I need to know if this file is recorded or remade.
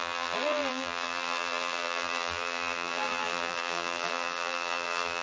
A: remade